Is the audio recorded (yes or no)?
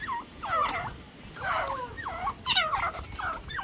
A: yes